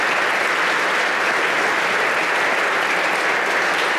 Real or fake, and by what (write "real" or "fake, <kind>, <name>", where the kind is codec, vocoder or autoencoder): real